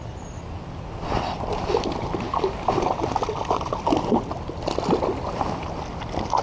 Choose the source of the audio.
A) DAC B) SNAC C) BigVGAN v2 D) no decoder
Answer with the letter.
D